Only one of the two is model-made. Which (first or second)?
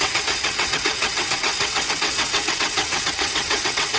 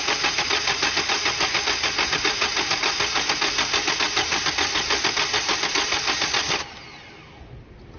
first